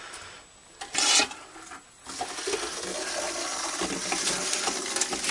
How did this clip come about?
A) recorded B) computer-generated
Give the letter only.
A